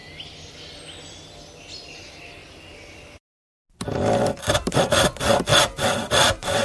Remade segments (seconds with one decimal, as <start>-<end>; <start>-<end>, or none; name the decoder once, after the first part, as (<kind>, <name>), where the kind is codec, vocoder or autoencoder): none